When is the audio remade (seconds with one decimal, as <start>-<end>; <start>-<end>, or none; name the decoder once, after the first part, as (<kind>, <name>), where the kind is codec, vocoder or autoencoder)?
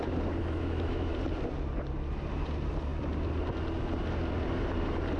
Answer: 0.4-1.1 (autoencoder, DAC-VAE)